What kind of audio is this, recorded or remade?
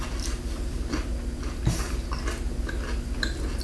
recorded